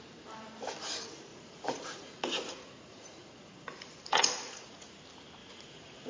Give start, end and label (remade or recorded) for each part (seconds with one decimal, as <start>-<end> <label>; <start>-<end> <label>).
0.0-1.3 recorded; 1.3-5.0 remade; 5.0-5.4 recorded; 5.4-6.1 remade